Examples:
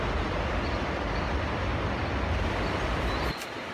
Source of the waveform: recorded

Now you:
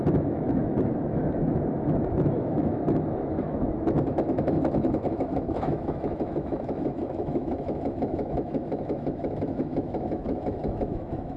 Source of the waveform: remade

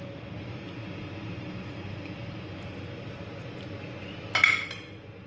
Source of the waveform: recorded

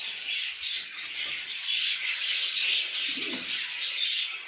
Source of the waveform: recorded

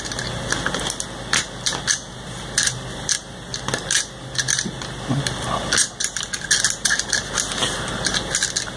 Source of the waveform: recorded